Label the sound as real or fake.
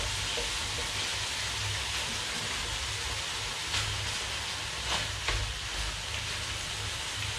real